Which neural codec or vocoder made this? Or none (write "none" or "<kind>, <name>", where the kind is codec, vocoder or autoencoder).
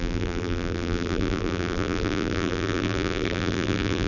vocoder, BigVGAN v2